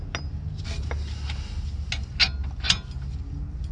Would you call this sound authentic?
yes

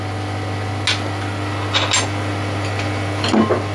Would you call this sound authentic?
yes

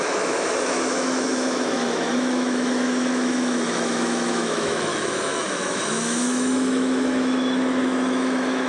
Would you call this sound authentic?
no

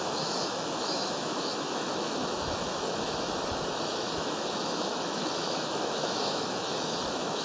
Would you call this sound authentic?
no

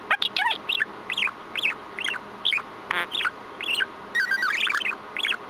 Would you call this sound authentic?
yes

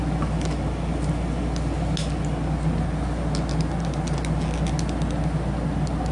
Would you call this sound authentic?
yes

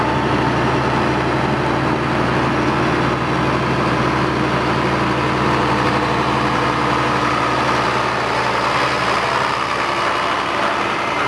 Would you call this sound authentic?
yes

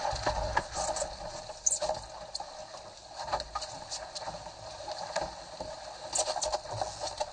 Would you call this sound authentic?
yes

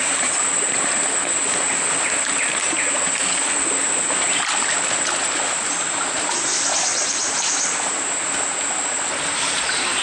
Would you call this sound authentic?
yes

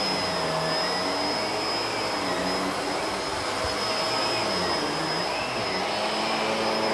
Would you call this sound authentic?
yes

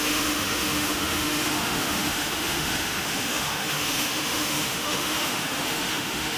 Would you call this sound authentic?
no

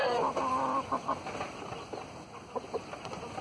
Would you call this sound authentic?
yes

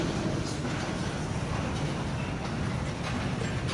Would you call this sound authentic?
yes